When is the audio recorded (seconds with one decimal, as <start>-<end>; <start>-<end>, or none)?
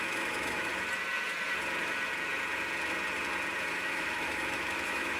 0.7-3.7